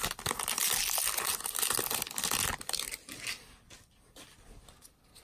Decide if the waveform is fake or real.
real